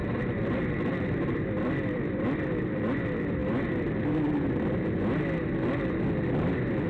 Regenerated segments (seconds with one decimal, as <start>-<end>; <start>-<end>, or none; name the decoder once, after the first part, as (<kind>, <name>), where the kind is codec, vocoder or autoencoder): 0.0-3.4 (vocoder, BigVGAN v2); 5.8-6.9